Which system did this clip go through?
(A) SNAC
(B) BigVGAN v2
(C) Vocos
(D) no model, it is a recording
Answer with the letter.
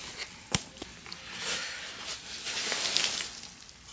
D